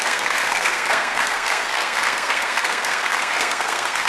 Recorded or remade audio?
remade